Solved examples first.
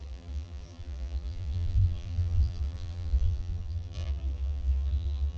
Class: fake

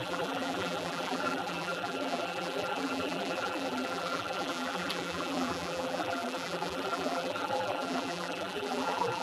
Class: fake